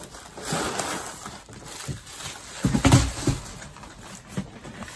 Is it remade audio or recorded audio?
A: recorded